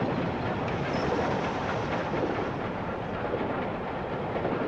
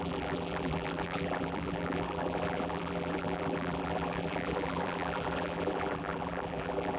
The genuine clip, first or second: first